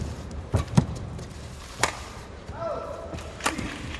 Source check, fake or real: fake